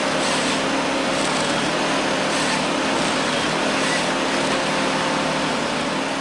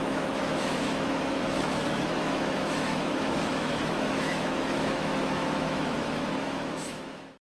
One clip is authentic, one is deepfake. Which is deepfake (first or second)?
second